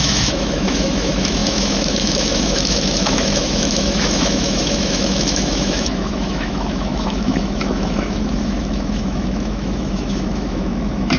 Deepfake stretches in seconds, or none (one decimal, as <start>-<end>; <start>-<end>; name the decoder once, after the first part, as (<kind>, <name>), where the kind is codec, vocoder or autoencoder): 0.0-11.2 (autoencoder, DAC-VAE)